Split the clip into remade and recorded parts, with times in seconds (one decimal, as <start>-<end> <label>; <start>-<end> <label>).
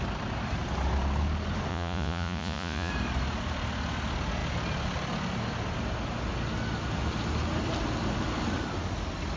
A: 0.0-1.7 recorded; 1.7-2.9 remade; 2.9-9.4 recorded